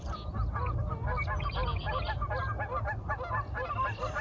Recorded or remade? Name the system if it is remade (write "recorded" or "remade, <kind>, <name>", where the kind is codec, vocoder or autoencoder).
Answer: recorded